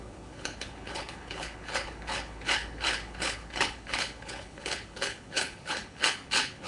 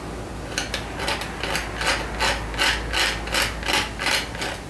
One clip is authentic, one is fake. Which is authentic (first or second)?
second